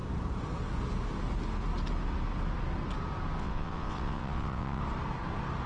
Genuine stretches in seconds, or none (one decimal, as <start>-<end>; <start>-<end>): 0.0-3.4; 4.8-5.7